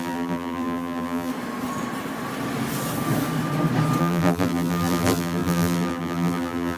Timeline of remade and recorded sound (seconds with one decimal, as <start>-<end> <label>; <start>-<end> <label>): 0.0-1.3 remade; 1.3-4.0 recorded; 4.0-6.8 remade